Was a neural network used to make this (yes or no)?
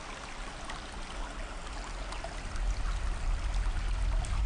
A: no